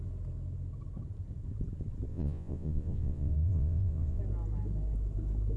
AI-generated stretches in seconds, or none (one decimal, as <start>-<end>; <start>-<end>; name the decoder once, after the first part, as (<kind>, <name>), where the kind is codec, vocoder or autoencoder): 2.1-4.2 (vocoder, Vocos)